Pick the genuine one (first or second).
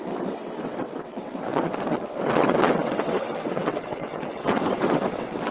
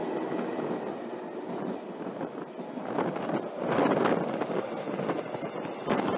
second